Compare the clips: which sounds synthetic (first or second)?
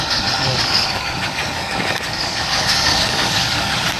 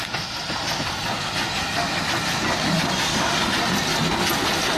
first